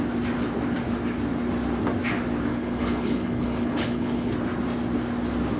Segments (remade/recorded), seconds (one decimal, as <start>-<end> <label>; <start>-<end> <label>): 0.0-2.5 recorded; 2.5-4.3 remade; 4.3-5.6 recorded